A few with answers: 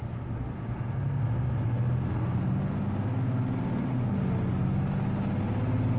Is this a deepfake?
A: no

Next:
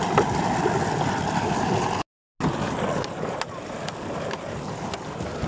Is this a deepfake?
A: no